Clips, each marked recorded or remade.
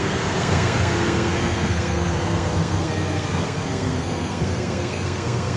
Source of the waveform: remade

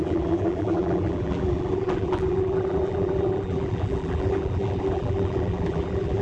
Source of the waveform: remade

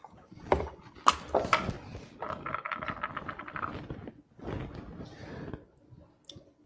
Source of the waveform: recorded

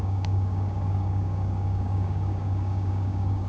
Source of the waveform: remade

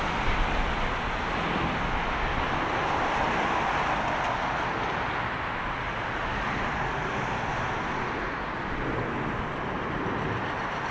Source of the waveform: recorded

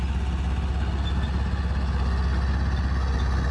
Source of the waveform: recorded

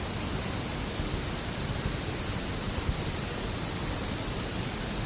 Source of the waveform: recorded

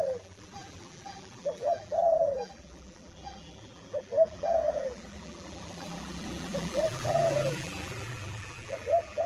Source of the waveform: remade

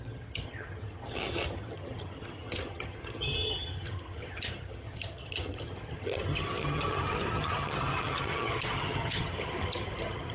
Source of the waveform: remade